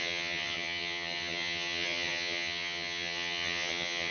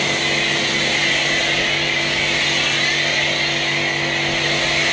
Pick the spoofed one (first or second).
first